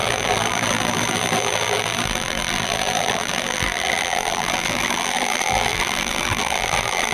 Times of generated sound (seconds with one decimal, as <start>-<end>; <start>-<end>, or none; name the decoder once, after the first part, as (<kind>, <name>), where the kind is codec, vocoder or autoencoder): 0.0-7.1 (vocoder, BigVGAN v2)